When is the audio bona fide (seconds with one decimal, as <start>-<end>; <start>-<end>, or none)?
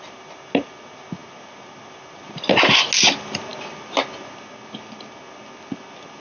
0.0-6.2